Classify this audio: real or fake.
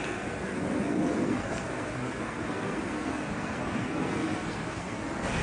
fake